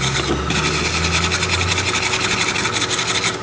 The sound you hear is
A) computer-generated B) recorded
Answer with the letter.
B